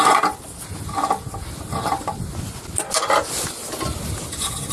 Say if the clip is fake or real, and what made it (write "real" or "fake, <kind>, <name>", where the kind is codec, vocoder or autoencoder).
real